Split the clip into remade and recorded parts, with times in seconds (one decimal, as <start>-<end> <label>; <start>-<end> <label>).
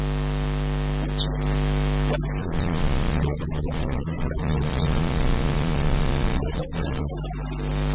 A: 0.0-2.4 recorded; 2.4-7.1 remade; 7.1-7.9 recorded